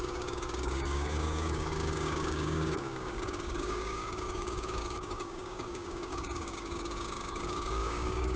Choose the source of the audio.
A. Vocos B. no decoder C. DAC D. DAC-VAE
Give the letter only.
C